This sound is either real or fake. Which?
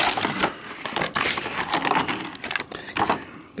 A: fake